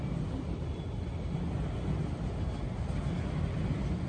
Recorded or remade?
recorded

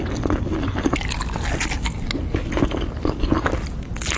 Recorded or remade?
recorded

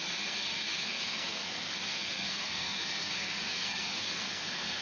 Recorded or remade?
remade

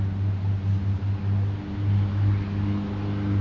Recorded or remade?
recorded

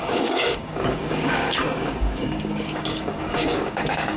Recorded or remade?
remade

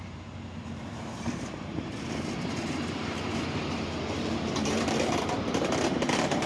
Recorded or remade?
remade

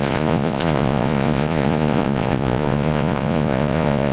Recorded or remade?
remade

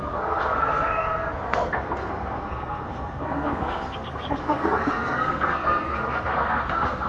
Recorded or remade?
remade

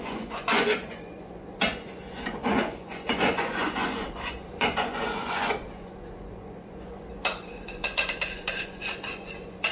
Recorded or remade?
remade